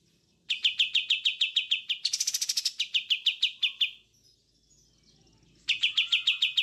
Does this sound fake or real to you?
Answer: real